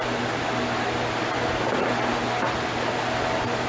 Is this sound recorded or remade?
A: recorded